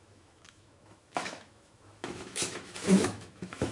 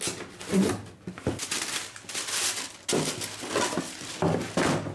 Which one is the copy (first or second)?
first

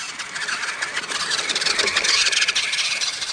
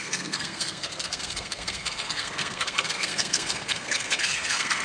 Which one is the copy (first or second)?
second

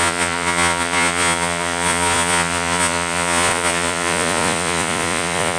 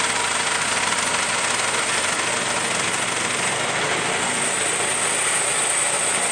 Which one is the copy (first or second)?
first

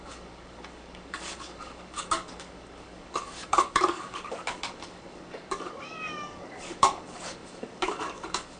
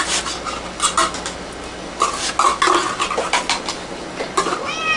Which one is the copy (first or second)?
first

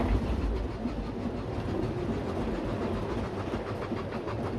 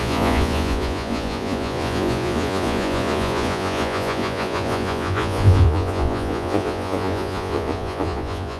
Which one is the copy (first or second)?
second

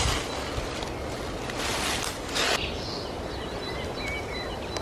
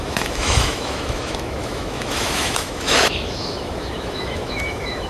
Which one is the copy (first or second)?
second